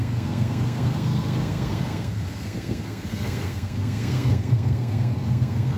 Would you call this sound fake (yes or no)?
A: yes